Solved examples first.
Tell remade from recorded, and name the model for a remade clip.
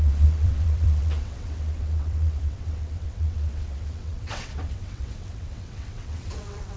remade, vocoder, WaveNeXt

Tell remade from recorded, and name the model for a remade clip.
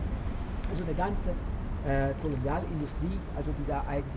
recorded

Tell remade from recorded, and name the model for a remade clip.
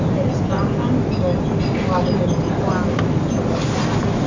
recorded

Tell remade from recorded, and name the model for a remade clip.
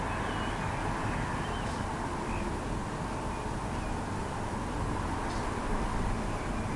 recorded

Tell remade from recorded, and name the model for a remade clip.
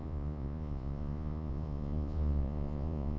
remade, vocoder, Vocos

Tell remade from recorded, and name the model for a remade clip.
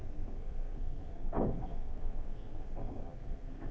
remade, codec, SNAC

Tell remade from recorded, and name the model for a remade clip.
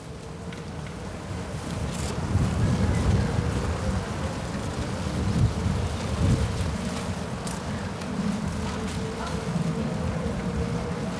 recorded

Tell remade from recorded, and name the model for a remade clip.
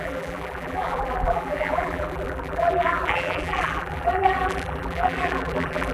remade, vocoder, BigVGAN v2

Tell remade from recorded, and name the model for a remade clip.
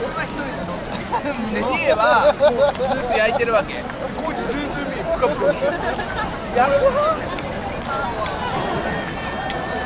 recorded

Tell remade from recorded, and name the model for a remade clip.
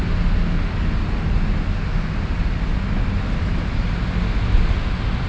recorded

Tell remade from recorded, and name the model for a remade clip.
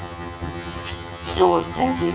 remade, vocoder, HiFi-GAN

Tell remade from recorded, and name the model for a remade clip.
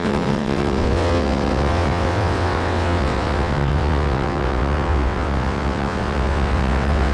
remade, vocoder, WaveNeXt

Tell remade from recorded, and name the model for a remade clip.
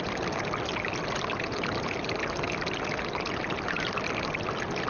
recorded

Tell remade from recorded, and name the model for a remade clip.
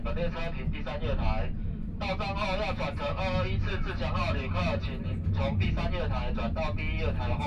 recorded